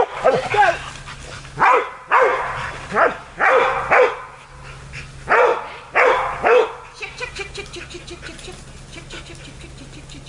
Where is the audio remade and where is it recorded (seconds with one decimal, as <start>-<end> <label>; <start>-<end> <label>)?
0.0-10.3 recorded